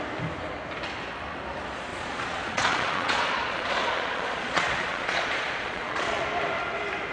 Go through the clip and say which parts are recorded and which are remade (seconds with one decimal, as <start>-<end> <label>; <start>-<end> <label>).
0.0-1.9 recorded; 1.9-6.2 remade; 6.2-7.1 recorded